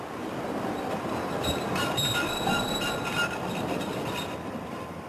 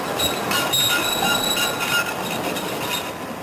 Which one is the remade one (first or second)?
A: first